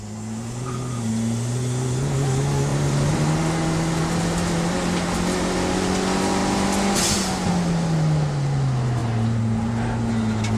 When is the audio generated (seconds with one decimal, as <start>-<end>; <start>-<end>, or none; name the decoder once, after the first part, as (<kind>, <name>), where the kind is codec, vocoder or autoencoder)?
2.7-3.3 (vocoder, BigVGAN v2)